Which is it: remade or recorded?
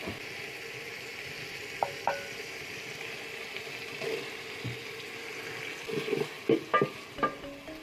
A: recorded